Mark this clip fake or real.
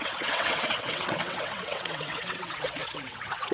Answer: fake